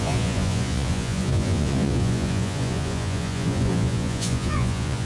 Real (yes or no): no